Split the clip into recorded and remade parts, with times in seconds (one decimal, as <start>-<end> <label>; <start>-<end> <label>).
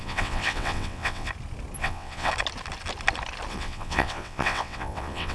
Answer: 0.0-1.3 remade; 1.3-1.8 recorded; 1.8-2.3 remade; 2.3-3.5 recorded; 3.5-5.3 remade